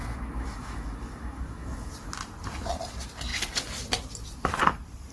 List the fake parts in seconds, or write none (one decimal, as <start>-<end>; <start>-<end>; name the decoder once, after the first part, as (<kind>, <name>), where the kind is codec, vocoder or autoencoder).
0.0-1.9 (autoencoder, DAC-VAE)